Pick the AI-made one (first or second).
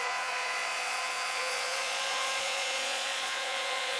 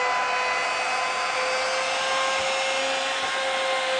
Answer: first